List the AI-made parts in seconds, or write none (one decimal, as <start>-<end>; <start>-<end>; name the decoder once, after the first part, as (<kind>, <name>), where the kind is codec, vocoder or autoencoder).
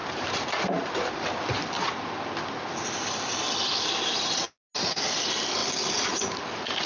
0.0-1.1 (vocoder, BigVGAN v2)